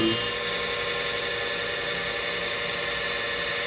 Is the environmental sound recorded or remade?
recorded